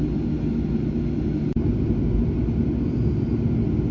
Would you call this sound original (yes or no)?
yes